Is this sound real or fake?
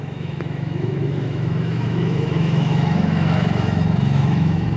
fake